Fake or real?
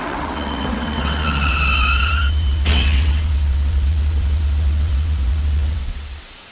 fake